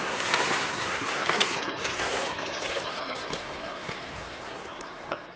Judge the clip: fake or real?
fake